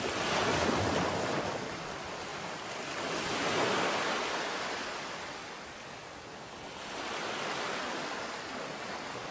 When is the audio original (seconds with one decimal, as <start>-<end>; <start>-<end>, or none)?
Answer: 0.0-9.3